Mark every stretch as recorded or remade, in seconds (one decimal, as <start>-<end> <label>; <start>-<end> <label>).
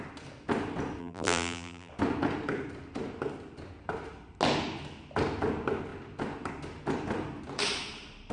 0.0-1.0 recorded; 1.0-1.9 remade; 1.9-8.3 recorded